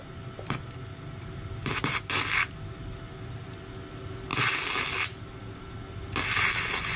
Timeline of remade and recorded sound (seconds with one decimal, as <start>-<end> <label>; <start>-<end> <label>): 0.0-7.0 recorded